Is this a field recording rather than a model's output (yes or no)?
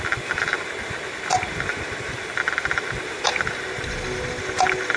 yes